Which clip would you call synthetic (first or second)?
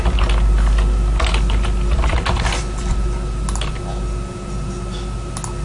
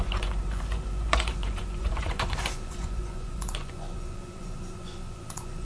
second